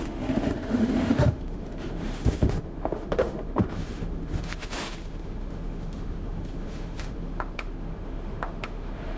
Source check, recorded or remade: remade